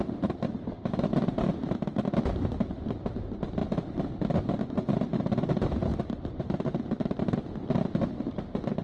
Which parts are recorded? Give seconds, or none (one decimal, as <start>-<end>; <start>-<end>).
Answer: 3.6-4.7; 5.9-6.4; 7.4-8.3